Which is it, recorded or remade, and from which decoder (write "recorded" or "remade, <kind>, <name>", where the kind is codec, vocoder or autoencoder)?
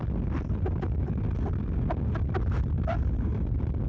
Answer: recorded